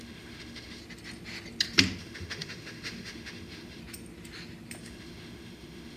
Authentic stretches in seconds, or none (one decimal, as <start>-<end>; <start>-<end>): 0.8-2.0; 3.8-4.8